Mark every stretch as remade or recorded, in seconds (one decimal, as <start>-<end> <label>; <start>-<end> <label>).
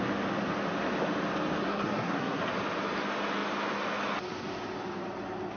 0.0-1.6 recorded; 1.6-2.4 remade; 2.4-5.6 recorded